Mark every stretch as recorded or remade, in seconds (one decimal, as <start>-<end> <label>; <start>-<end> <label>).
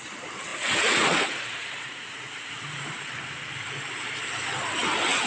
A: 0.0-0.5 recorded; 0.5-2.9 remade; 2.9-5.3 recorded